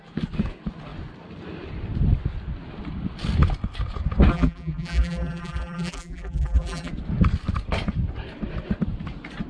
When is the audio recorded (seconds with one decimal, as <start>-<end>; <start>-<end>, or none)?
0.0-4.3; 6.9-9.5